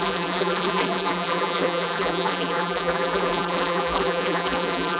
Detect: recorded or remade remade